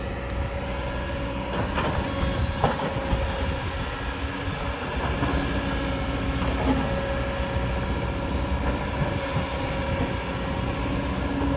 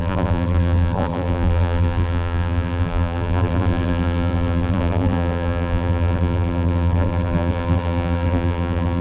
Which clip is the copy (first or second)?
second